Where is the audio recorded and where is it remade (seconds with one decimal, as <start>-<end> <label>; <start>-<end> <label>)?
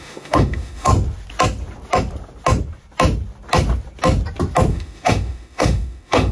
0.0-0.9 remade; 0.9-4.7 recorded; 4.7-6.3 remade